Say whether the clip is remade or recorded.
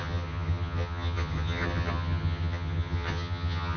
remade